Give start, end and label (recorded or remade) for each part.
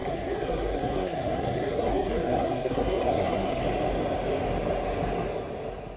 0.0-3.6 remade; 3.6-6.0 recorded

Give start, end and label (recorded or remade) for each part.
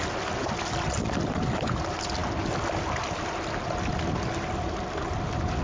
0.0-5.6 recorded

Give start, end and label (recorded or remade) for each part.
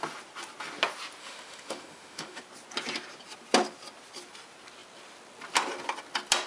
0.0-1.2 recorded; 1.2-2.4 remade; 2.4-6.5 recorded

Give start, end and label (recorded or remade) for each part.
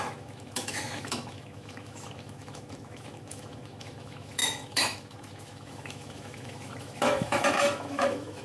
0.0-8.4 remade